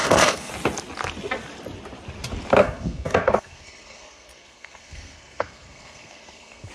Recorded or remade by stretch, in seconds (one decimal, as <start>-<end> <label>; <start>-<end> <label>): 0.0-0.5 remade; 0.5-2.6 recorded; 2.6-6.7 remade